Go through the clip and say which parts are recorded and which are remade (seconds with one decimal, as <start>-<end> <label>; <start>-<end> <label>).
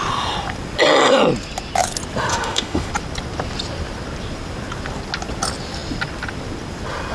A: 0.0-2.3 recorded; 2.3-2.9 remade; 2.9-7.1 recorded